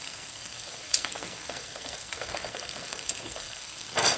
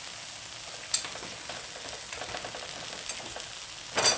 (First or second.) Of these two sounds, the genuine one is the second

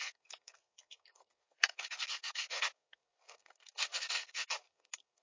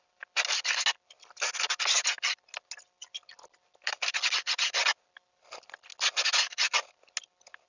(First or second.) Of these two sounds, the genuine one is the second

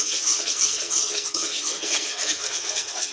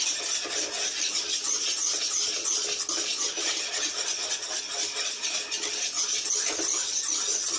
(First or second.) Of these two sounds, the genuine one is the second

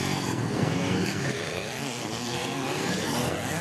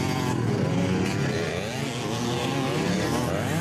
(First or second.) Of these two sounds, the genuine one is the second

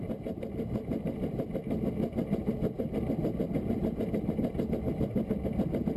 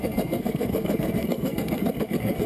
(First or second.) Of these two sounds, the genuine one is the first